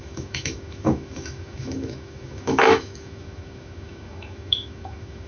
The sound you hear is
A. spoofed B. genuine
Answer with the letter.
A